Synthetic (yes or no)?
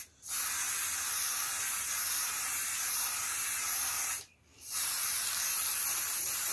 no